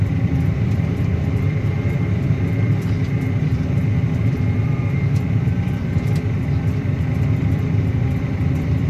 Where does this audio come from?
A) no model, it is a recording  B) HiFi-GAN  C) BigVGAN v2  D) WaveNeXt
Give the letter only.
C